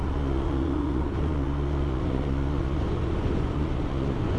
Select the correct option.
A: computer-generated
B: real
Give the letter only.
A